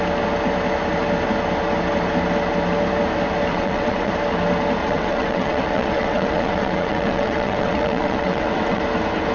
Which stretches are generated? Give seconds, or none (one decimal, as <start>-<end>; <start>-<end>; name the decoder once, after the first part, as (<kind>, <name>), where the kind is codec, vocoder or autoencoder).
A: 3.5-4.1 (vocoder, WaveNeXt); 4.8-8.8